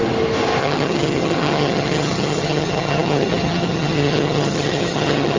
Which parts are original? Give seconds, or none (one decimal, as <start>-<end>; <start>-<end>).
0.0-0.6